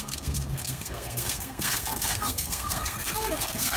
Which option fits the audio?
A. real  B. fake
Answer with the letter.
B